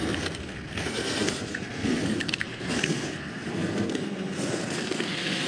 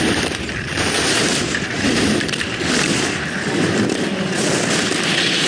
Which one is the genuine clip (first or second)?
second